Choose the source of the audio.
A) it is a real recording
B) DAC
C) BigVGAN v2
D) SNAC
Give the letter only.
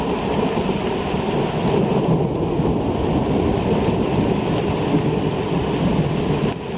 A